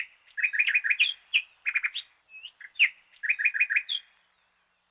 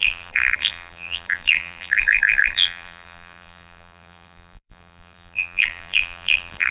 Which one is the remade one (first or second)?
second